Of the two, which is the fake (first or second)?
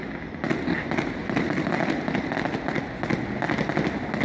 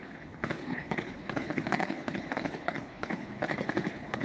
second